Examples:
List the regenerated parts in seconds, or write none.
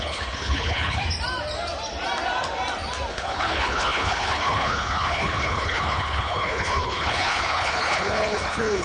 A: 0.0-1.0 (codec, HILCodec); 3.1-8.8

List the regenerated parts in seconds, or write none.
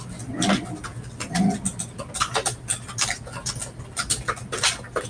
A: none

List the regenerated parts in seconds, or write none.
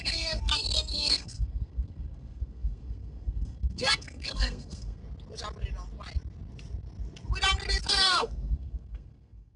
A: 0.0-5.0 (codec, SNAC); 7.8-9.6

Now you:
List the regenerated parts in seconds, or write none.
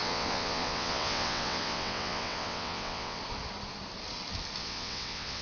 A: 0.0-3.2 (vocoder, WaveNeXt); 4.6-5.4